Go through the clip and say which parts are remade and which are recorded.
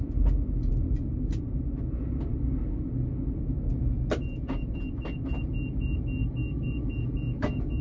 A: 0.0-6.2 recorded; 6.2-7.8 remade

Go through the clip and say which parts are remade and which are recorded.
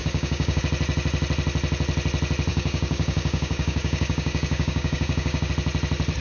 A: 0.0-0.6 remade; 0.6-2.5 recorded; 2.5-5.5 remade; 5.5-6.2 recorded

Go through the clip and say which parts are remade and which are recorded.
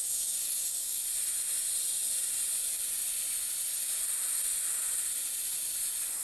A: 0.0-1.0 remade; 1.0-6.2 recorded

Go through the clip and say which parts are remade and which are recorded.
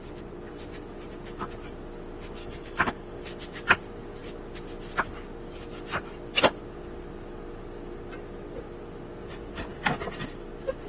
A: 0.0-2.4 recorded; 2.4-3.2 remade; 3.2-10.9 recorded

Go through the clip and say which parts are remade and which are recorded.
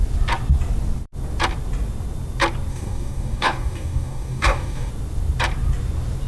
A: 0.0-2.7 recorded; 2.7-4.9 remade; 4.9-6.3 recorded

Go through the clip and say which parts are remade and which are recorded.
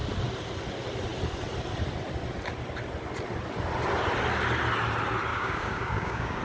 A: 0.0-5.3 recorded; 5.3-6.4 remade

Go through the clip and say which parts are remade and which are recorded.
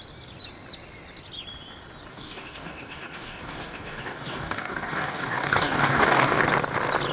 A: 0.0-2.1 recorded; 2.1-6.4 remade; 6.4-7.1 recorded